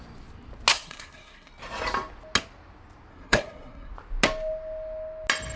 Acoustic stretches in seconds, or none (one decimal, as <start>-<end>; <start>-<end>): 0.0-0.7; 1.5-3.1; 3.9-5.6